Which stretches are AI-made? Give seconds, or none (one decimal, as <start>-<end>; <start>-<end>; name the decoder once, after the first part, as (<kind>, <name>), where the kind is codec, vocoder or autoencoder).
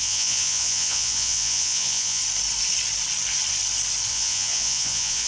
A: 0.0-2.2 (vocoder, Vocos); 4.1-5.3